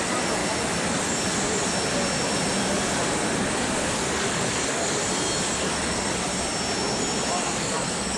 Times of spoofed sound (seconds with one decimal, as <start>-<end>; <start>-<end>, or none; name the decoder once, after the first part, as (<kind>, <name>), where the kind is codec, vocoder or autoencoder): 0.0-0.4 (codec, DAC); 3.4-5.0; 5.6-6.3; 7.4-8.2